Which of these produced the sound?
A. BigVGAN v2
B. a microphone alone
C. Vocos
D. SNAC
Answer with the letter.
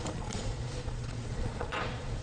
C